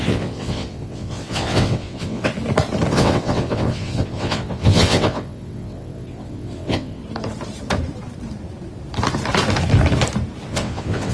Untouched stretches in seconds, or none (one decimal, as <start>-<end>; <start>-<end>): 2.3-2.9; 7.0-10.5